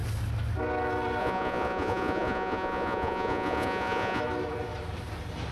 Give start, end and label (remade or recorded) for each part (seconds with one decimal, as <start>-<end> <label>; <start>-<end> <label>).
0.0-1.2 recorded; 1.2-4.2 remade; 4.2-5.5 recorded